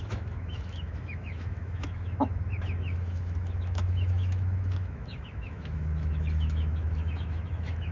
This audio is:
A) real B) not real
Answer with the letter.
B